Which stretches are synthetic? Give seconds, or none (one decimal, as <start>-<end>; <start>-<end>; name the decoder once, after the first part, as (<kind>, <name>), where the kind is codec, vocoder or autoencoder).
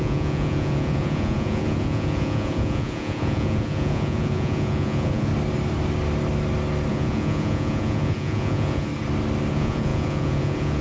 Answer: 0.0-5.3 (vocoder, Vocos); 6.9-8.9; 9.5-10.8